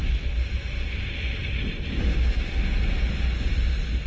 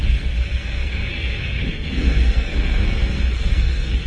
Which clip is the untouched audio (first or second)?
first